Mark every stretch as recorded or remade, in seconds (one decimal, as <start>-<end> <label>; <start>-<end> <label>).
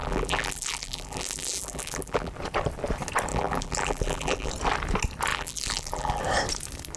0.0-2.3 remade; 2.3-3.3 recorded; 3.3-4.5 remade; 4.5-5.3 recorded; 5.3-6.2 remade; 6.2-7.0 recorded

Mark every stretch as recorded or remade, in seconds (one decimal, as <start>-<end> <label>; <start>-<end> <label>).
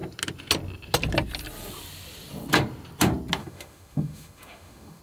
0.0-3.4 recorded; 3.4-5.0 remade